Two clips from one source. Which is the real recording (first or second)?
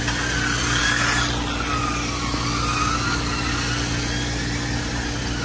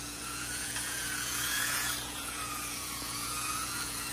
first